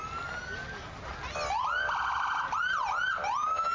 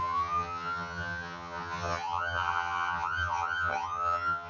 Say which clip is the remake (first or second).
second